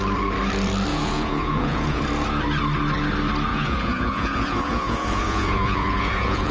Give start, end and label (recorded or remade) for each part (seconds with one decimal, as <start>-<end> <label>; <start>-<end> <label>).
0.0-0.9 recorded; 0.9-2.0 remade; 2.0-3.5 recorded; 3.5-6.5 remade